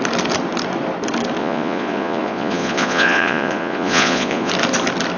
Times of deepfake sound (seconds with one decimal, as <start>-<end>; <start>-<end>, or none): 1.4-4.5